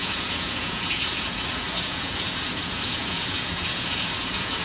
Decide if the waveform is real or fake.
fake